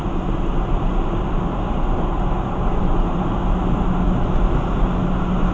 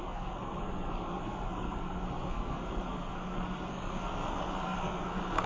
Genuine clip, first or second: first